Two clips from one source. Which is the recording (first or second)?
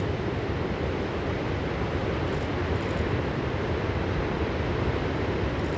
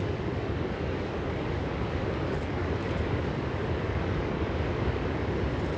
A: first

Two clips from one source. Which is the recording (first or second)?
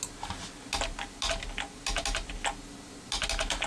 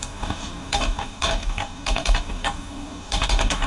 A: first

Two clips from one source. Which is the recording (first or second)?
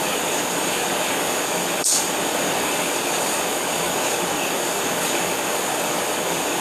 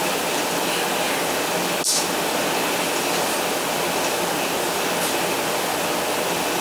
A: second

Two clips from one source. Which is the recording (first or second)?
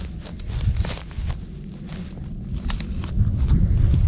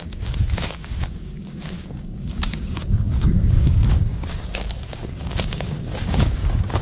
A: first